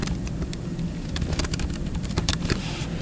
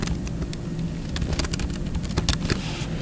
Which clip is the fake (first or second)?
first